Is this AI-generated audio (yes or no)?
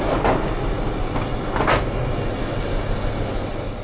no